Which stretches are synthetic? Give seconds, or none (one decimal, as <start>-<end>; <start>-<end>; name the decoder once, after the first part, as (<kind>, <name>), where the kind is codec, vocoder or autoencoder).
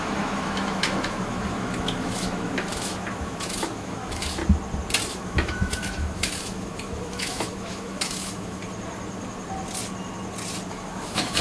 0.0-4.4 (autoencoder, DAC-VAE); 5.1-8.6; 10.7-11.4